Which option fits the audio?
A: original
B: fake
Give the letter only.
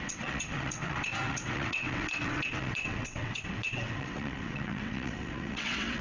B